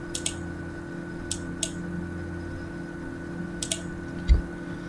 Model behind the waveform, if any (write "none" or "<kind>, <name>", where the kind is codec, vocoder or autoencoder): none